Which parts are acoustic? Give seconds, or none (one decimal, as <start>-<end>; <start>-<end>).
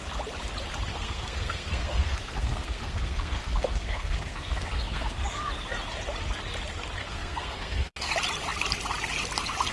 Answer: 0.0-0.9; 5.5-7.0; 8.1-9.7